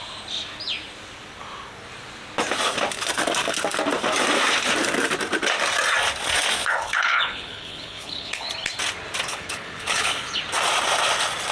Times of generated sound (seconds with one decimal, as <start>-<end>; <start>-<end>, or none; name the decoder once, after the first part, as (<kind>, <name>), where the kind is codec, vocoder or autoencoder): 6.6-8.5 (codec, HILCodec); 9.3-10.4